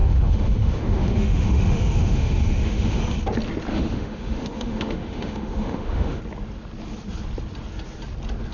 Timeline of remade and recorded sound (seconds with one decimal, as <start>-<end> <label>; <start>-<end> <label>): 0.0-3.0 remade; 3.0-3.7 recorded; 3.7-6.2 remade; 6.2-8.5 recorded